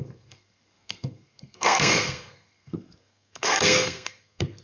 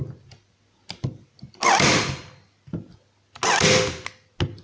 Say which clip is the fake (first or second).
first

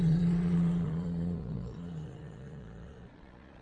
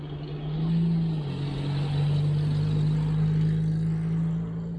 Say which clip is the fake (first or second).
first